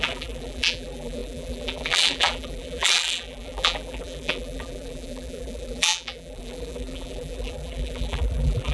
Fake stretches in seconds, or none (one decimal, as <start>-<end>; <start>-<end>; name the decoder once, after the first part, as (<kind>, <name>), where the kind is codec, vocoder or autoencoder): 0.0-8.7 (vocoder, BigVGAN v2)